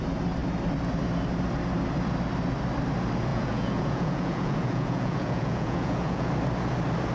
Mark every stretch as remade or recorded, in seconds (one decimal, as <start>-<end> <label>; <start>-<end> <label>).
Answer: 0.0-3.3 recorded; 3.3-6.3 remade; 6.3-7.1 recorded